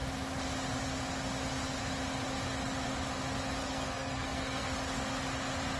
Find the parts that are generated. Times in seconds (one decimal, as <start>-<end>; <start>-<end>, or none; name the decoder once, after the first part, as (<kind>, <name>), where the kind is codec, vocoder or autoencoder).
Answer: 3.6-4.7 (codec, SNAC)